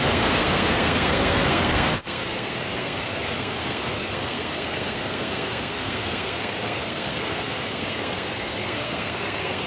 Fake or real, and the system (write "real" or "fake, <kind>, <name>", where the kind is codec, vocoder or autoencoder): fake, codec, SNAC